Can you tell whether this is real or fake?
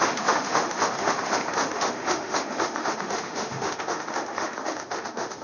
fake